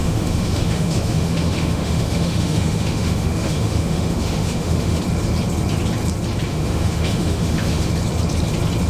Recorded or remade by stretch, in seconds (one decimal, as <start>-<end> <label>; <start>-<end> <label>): 0.0-5.0 remade; 5.0-6.5 recorded; 6.5-7.9 remade; 7.9-8.9 recorded